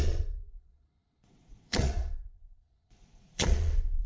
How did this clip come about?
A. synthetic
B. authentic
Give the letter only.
A